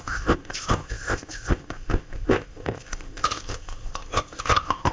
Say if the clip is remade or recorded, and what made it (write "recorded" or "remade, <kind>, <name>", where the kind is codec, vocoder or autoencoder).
remade, codec, ZipCodec